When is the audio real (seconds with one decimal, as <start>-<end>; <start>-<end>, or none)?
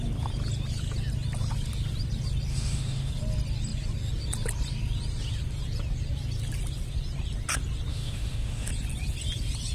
0.0-2.5; 3.1-7.9; 8.7-9.7